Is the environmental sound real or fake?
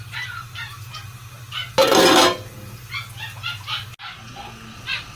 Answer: real